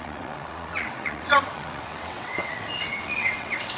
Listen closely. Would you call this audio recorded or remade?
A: remade